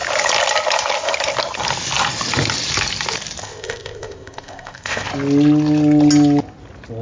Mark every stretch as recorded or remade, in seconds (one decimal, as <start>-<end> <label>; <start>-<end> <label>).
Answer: 0.0-3.4 recorded; 3.4-5.1 remade; 5.1-7.0 recorded